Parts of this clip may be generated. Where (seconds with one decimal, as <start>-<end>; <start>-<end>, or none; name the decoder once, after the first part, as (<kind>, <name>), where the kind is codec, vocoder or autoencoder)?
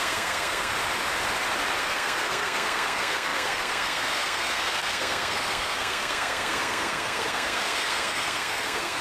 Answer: 0.0-0.7 (codec, SNAC); 1.8-9.0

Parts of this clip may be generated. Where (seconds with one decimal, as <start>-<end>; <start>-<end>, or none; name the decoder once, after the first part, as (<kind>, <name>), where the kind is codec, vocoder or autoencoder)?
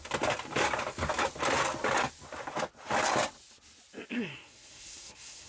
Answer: 4.1-5.5 (codec, SNAC)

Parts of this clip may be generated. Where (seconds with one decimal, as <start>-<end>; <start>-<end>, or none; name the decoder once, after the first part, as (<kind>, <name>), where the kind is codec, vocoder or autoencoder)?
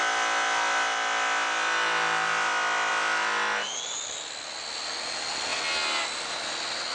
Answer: none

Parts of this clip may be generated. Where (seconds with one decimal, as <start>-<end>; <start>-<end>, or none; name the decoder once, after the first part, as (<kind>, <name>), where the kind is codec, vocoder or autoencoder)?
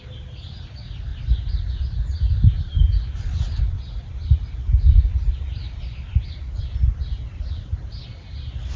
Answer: none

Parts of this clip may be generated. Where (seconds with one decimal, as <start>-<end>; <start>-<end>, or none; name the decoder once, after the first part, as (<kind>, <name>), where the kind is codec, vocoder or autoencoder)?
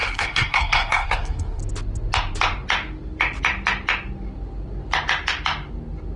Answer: 0.0-1.6 (codec, SNAC)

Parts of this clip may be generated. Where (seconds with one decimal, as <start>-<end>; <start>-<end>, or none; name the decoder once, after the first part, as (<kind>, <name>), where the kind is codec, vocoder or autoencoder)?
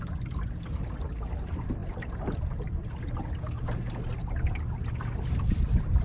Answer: none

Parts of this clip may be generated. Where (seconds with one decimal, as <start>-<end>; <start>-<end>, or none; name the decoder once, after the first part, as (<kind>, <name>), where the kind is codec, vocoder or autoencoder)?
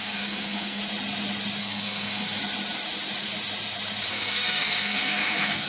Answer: 0.0-0.8 (codec, SNAC); 1.6-2.4; 4.1-5.7